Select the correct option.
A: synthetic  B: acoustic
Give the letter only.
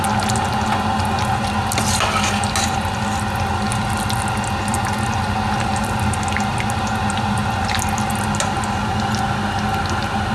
B